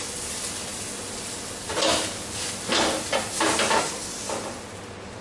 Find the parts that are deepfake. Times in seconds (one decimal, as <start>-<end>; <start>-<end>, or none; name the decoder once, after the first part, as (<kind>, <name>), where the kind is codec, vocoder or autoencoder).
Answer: none